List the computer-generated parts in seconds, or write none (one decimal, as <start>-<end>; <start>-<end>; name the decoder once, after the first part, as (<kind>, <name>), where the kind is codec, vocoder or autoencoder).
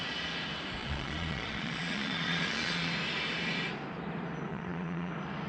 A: 0.8-2.9 (vocoder, Vocos); 4.5-5.1